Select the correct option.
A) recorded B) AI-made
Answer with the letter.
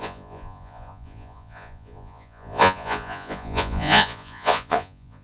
B